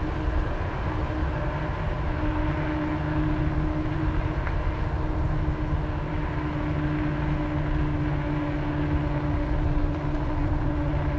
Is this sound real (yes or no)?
yes